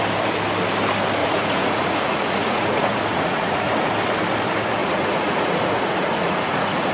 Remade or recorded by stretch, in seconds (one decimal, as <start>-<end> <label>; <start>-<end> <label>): 0.0-1.2 recorded; 1.2-3.9 remade; 3.9-4.8 recorded; 4.8-6.9 remade